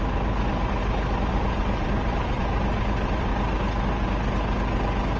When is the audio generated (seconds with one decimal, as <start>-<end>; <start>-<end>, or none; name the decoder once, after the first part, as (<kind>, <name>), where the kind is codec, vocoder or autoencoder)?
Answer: 0.0-0.8 (vocoder, BigVGAN v2); 1.3-3.3